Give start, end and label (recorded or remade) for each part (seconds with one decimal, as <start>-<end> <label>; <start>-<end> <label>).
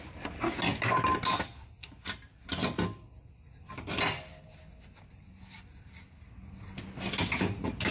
0.0-7.9 recorded